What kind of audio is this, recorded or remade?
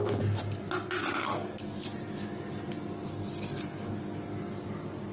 recorded